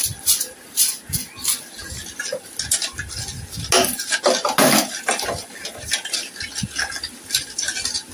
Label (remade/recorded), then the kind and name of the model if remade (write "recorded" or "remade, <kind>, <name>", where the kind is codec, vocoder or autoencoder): recorded